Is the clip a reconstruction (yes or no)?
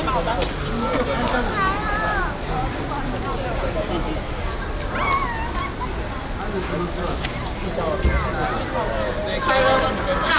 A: no